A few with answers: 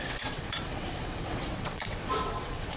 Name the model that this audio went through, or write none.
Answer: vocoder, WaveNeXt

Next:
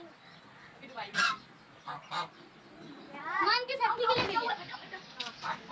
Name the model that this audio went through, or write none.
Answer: none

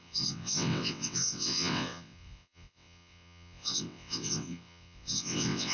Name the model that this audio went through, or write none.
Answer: vocoder, WaveNeXt